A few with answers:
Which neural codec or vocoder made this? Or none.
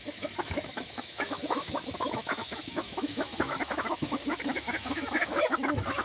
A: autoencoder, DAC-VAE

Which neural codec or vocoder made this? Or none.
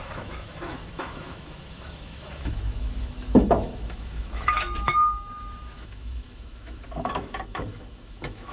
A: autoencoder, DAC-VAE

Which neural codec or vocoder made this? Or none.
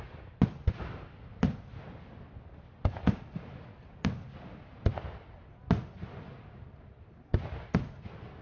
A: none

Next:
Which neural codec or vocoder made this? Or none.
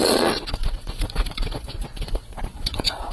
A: vocoder, Vocos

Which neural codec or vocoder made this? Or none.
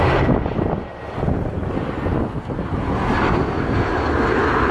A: none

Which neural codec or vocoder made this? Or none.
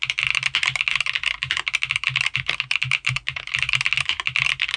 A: none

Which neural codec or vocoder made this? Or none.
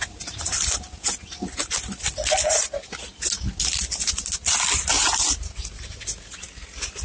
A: none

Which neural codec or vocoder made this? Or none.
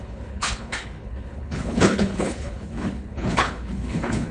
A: codec, HILCodec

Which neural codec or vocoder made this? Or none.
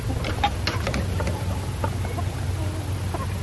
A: none